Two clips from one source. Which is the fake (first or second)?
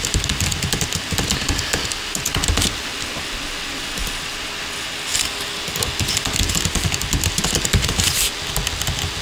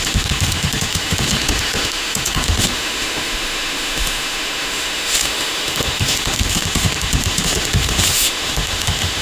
second